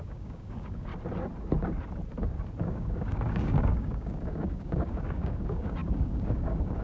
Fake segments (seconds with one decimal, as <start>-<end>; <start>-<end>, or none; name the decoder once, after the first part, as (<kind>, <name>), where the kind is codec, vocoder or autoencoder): 0.0-0.9 (codec, DAC); 2.6-6.8